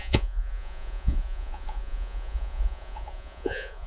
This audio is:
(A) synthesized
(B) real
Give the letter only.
A